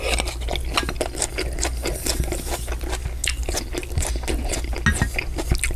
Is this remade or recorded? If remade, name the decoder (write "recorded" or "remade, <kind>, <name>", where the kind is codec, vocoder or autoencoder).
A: recorded